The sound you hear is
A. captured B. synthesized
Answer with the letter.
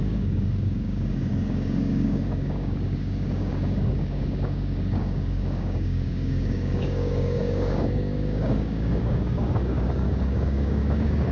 B